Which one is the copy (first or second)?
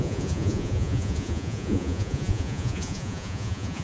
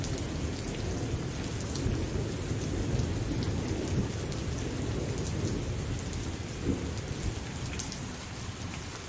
first